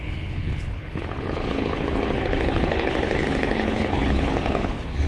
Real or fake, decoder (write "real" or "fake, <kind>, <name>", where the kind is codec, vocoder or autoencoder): fake, codec, HILCodec